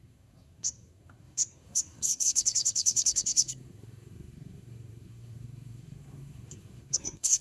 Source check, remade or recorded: remade